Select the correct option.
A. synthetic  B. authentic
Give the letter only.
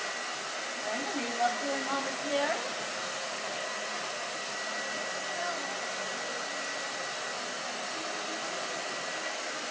B